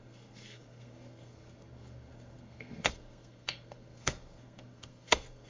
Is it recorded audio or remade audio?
remade